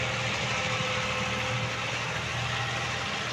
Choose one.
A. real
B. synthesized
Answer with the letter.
A